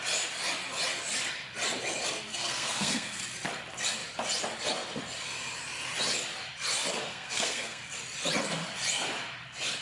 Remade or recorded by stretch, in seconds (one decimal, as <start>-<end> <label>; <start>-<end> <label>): 0.0-2.3 recorded; 2.3-3.2 remade; 3.2-7.1 recorded; 7.1-7.8 remade; 7.8-9.8 recorded